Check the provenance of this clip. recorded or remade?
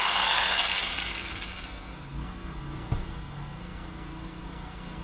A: remade